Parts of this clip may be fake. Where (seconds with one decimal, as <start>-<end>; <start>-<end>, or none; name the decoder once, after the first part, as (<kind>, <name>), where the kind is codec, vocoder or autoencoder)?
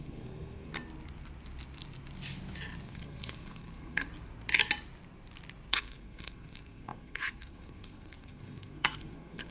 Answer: 0.0-0.7 (codec, SNAC); 2.8-4.1; 5.7-9.5